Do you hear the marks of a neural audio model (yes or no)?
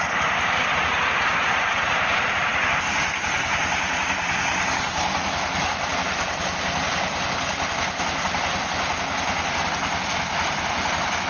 no